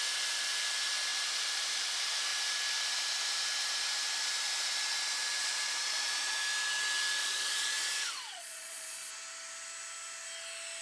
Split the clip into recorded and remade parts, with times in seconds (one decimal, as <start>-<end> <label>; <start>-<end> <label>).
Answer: 0.0-5.4 recorded; 5.4-6.3 remade; 6.3-7.2 recorded; 7.2-9.1 remade; 9.1-10.8 recorded